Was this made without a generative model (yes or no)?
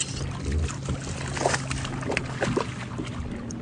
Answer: yes